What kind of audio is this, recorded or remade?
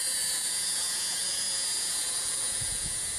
remade